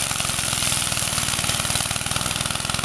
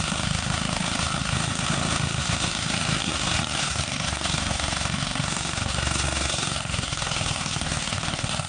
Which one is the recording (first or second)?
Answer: first